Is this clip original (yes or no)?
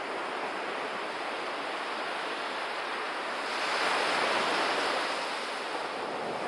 yes